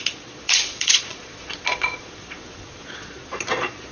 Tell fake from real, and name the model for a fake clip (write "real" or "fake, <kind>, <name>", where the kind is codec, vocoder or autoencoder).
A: fake, vocoder, Vocos